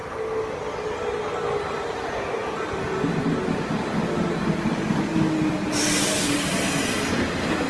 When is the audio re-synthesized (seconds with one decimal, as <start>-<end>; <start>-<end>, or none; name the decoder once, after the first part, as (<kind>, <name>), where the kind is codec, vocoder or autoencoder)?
none